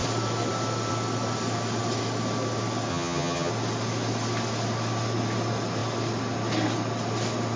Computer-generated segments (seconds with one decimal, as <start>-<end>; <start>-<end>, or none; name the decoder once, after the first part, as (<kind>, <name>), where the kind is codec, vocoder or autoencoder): 2.9-3.5 (vocoder, HiFi-GAN)